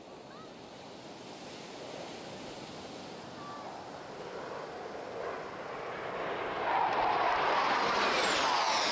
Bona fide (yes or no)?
yes